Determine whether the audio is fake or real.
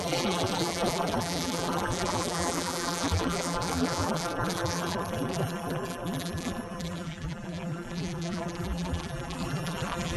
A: fake